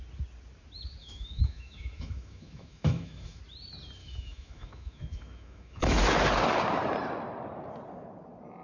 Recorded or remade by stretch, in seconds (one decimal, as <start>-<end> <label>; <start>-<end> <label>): 0.0-1.0 recorded; 1.0-3.4 remade; 3.4-4.0 recorded; 4.0-6.0 remade; 6.0-8.6 recorded